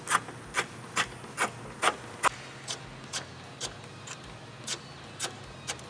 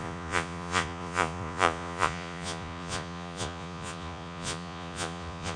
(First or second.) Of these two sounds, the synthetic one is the second